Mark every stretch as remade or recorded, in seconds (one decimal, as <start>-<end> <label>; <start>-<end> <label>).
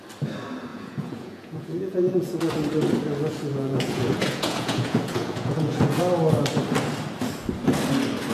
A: 0.0-0.7 recorded; 0.7-2.5 remade; 2.5-3.3 recorded; 3.3-6.0 remade; 6.0-8.3 recorded